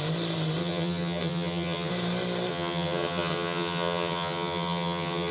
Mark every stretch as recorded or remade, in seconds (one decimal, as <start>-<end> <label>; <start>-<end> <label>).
0.0-0.6 recorded; 0.6-1.9 remade; 1.9-2.5 recorded; 2.5-5.3 remade